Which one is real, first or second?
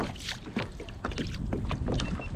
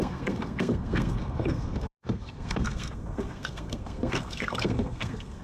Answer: first